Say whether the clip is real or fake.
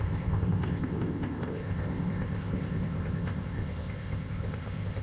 fake